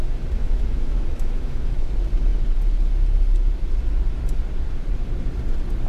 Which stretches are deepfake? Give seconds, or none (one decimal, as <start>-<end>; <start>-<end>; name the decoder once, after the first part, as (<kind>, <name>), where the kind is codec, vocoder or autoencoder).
0.4-1.9 (autoencoder, DAC-VAE)